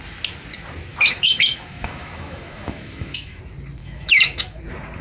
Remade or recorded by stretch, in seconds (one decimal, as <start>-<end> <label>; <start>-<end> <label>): 0.0-0.9 recorded; 0.9-3.4 remade; 3.4-3.8 recorded; 3.8-4.6 remade; 4.6-5.0 recorded

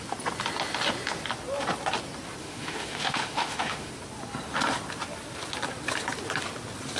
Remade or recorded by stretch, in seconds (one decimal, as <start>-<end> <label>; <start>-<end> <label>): 0.0-2.4 recorded; 2.4-3.9 remade; 3.9-7.0 recorded